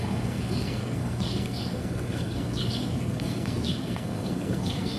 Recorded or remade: remade